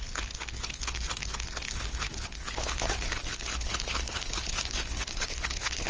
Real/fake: fake